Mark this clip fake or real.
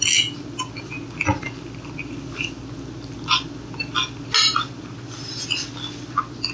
real